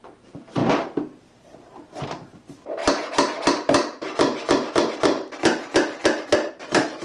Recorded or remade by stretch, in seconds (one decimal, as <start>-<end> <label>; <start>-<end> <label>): 0.0-0.6 remade; 0.6-1.2 recorded; 1.2-2.8 remade; 2.8-6.5 recorded; 6.5-7.0 remade